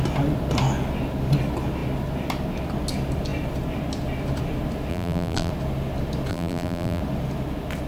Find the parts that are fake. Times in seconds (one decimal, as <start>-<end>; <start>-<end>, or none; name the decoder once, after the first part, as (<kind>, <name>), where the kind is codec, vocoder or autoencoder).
4.9-5.5 (vocoder, BigVGAN v2); 6.3-7.0